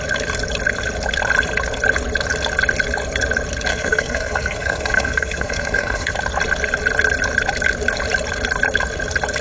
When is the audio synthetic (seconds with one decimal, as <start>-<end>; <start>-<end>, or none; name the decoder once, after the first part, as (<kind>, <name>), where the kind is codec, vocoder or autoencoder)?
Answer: 3.7-6.1 (codec, SNAC)